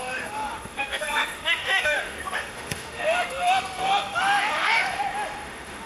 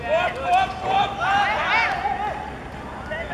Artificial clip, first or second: first